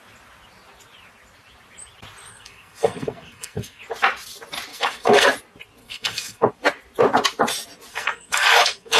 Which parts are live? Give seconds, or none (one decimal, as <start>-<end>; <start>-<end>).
0.0-2.3; 3.8-4.7; 5.3-5.8; 6.5-7.9